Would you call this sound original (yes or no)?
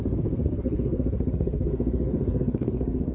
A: no